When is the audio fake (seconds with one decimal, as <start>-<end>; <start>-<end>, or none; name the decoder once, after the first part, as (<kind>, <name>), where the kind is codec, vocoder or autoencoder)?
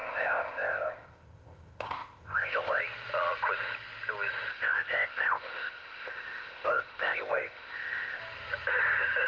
0.0-2.8 (codec, ZipCodec); 4.5-8.2